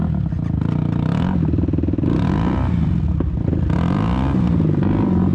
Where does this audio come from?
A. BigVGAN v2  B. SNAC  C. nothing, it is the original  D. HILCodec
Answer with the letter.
C